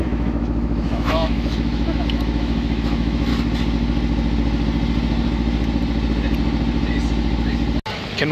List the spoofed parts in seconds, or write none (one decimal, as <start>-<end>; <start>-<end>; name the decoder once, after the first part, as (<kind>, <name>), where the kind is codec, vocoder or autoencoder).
0.0-3.3 (autoencoder, DAC-VAE)